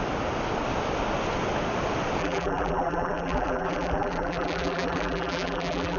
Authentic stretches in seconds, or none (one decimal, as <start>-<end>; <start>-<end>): 0.0-2.2